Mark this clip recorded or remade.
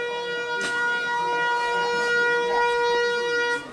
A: recorded